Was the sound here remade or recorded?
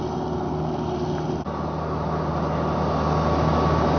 recorded